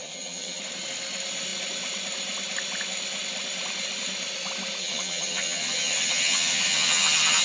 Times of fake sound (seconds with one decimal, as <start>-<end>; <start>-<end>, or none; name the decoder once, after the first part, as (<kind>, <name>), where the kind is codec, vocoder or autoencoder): 0.0-0.6 (vocoder, HiFi-GAN); 4.8-7.4